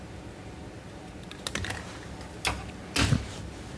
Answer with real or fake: real